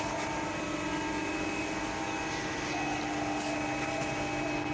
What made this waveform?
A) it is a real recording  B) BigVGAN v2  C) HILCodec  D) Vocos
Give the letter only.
A